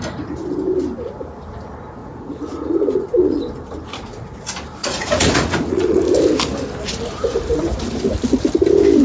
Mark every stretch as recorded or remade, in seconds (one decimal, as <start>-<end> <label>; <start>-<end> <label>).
0.0-2.0 recorded; 2.0-3.4 remade; 3.4-4.8 recorded; 4.8-6.0 remade; 6.0-9.0 recorded